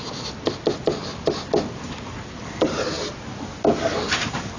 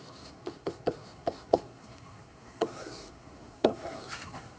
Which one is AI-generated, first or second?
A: second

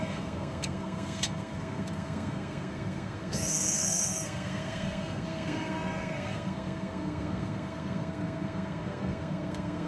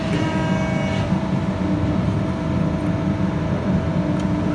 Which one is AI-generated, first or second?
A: first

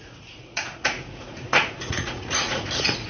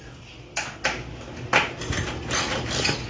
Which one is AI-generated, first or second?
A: first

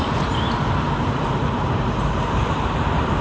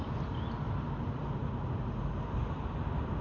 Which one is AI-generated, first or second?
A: first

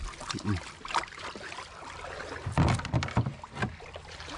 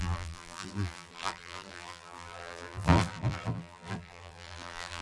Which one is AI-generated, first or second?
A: second